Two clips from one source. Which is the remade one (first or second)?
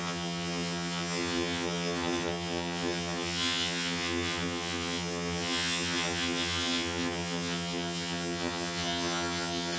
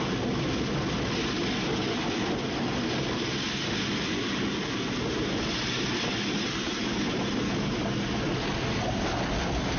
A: first